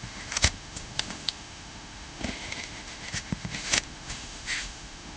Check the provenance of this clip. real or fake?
fake